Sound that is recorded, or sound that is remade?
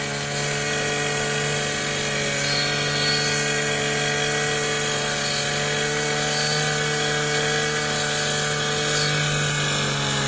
recorded